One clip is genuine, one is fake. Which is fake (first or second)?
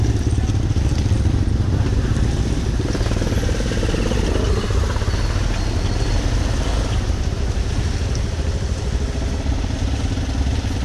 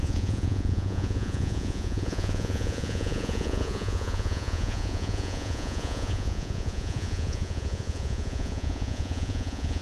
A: second